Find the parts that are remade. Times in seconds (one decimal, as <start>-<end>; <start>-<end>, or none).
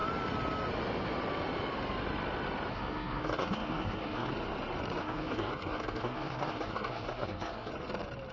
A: 2.7-4.3; 5.0-7.7